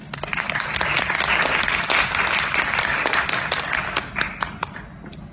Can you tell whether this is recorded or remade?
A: recorded